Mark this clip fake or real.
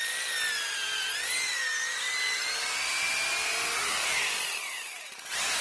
real